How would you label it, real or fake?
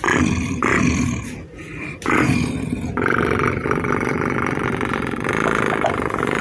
real